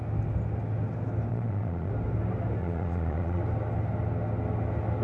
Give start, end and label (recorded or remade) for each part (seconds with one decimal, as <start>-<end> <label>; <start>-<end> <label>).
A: 0.0-1.3 recorded; 1.3-1.9 remade; 1.9-2.6 recorded; 2.6-3.4 remade; 3.4-5.0 recorded